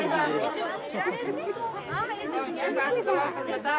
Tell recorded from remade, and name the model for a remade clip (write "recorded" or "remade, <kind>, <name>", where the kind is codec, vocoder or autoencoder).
recorded